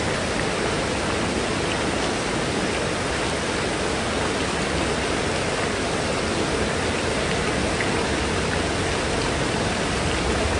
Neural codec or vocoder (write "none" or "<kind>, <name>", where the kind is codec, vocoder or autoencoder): none